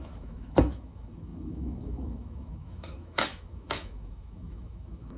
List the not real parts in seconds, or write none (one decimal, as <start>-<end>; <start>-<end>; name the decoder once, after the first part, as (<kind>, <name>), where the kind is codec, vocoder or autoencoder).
0.0-5.2 (autoencoder, DAC-VAE)